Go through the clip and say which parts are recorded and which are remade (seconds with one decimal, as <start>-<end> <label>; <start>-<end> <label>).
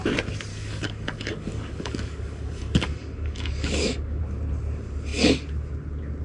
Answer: 0.0-0.5 recorded; 0.5-4.2 remade; 4.2-6.2 recorded